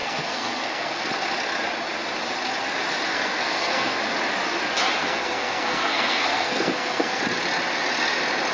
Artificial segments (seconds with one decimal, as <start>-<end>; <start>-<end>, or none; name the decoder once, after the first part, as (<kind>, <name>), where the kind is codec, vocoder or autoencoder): 0.0-1.1 (codec, SNAC); 3.1-4.0; 5.0-7.2